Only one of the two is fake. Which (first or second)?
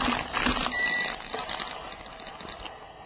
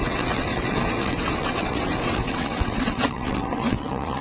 second